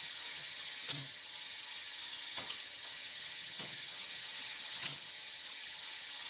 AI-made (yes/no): yes